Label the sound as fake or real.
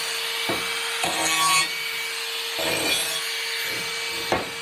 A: real